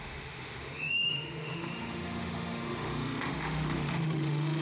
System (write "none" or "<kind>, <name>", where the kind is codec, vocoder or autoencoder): autoencoder, DAC-VAE